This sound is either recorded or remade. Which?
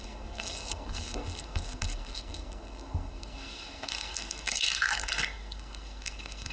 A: remade